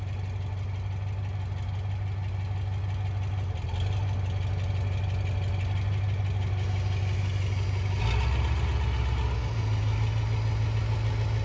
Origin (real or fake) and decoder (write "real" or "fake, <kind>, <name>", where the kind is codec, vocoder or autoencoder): real